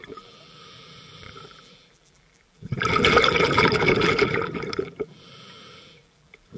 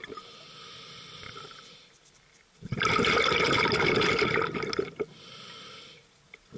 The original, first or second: second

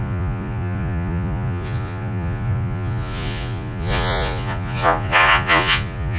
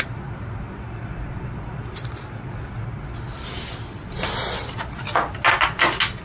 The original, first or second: second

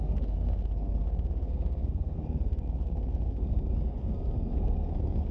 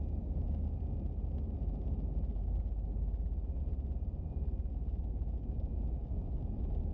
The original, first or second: second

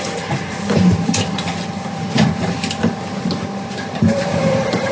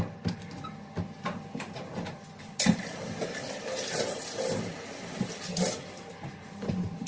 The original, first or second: second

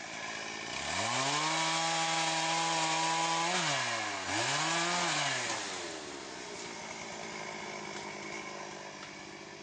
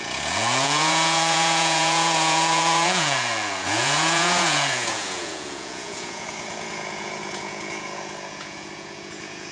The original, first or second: first